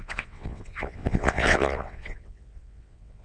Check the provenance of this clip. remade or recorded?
remade